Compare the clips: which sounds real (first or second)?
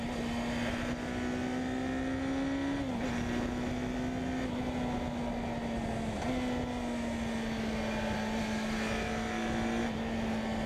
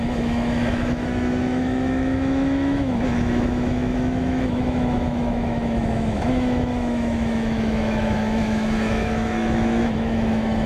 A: first